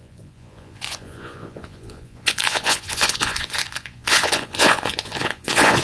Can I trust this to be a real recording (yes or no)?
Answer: no